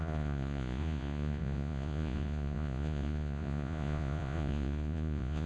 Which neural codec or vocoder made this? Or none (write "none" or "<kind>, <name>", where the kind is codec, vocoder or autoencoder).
vocoder, Vocos